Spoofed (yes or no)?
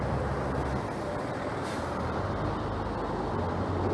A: no